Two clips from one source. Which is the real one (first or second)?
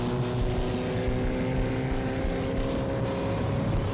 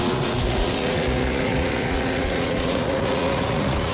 first